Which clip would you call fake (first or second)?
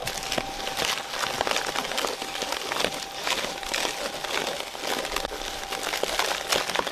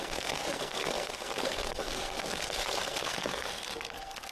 second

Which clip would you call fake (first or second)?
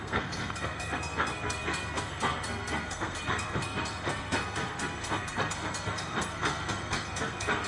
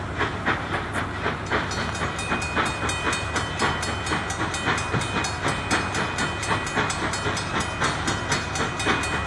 first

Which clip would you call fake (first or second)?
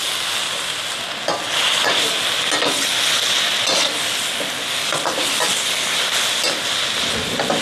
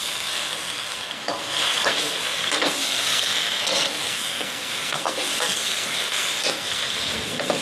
second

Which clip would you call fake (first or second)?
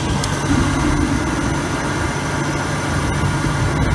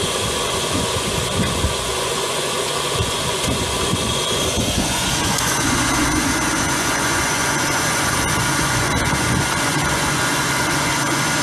second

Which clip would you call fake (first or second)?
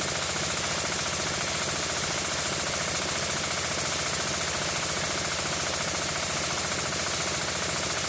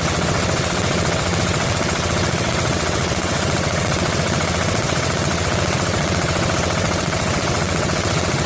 second